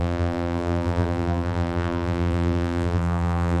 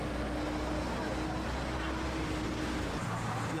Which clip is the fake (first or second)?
first